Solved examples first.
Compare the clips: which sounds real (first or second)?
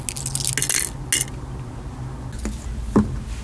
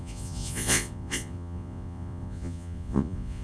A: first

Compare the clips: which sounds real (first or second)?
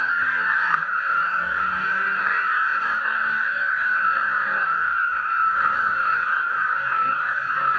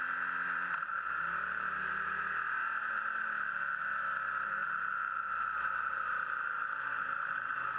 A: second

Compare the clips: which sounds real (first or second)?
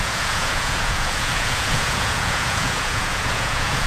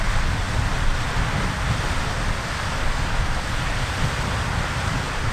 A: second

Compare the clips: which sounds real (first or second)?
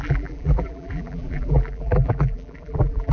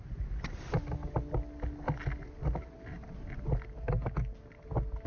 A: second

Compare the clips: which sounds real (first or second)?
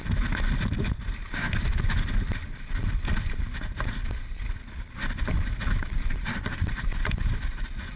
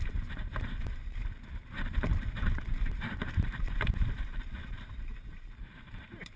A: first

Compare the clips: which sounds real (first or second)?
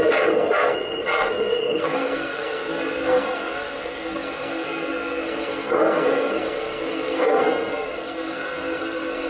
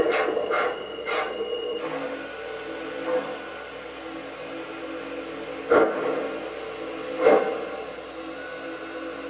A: second